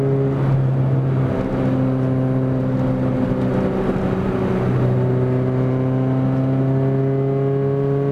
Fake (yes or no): no